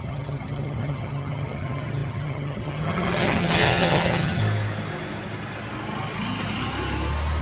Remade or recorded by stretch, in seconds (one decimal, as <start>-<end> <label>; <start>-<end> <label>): 0.0-4.4 remade; 4.4-7.4 recorded